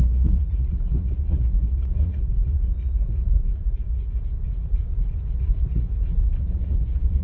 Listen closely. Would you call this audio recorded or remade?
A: remade